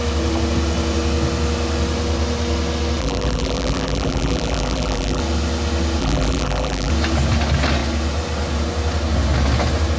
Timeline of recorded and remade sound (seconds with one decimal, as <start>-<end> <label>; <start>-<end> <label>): 0.0-3.0 recorded; 3.0-5.2 remade; 5.2-6.0 recorded; 6.0-6.9 remade; 6.9-10.0 recorded